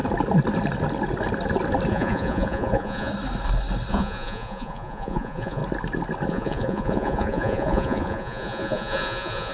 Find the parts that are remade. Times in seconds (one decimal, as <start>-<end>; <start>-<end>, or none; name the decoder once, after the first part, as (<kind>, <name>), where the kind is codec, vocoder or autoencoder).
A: 1.9-3.1 (vocoder, Vocos); 3.9-5.6; 6.3-9.5